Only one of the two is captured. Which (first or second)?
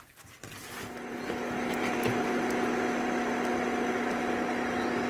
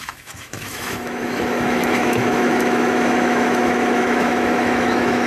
first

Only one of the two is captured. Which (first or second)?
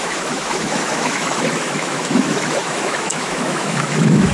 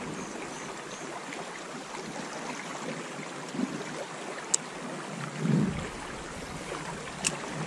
second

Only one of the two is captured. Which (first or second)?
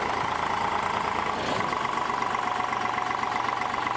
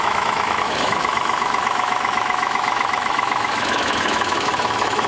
first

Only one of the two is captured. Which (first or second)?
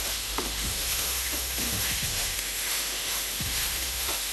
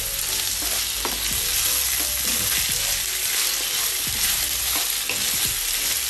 second